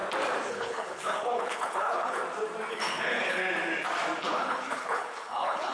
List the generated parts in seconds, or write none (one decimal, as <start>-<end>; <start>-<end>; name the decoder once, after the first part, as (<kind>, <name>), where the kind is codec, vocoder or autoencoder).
0.5-2.2 (codec, HILCodec); 2.7-3.4; 4.2-5.7